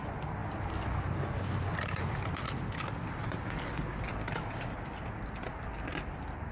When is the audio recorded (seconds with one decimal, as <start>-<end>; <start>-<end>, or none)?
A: 0.0-6.5